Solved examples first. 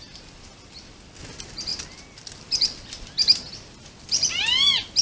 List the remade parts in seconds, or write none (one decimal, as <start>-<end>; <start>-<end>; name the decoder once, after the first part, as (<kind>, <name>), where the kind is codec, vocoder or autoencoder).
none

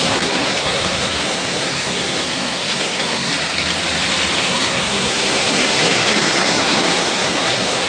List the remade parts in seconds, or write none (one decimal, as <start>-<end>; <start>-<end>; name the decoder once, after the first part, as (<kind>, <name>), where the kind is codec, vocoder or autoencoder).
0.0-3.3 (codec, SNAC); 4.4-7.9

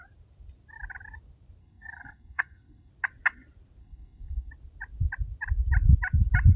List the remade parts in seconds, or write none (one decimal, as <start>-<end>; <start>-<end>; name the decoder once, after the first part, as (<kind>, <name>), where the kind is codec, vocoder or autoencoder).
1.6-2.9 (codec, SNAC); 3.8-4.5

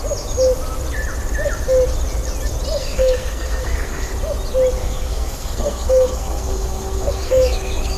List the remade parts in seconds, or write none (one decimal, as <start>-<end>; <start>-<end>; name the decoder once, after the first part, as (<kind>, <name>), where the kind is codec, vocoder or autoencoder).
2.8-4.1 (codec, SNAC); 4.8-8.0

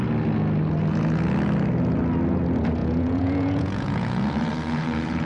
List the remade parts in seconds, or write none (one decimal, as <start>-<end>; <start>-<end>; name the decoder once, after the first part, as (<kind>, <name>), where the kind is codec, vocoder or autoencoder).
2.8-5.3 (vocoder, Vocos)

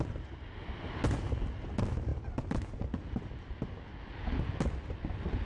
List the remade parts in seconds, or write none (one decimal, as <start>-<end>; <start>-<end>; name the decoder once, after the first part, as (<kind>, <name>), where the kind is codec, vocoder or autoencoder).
none